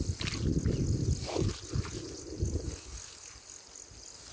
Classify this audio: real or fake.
real